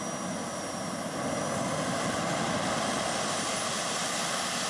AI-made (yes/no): no